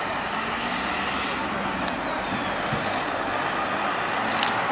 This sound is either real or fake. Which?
real